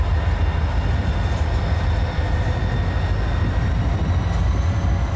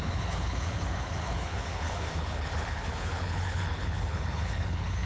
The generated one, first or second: second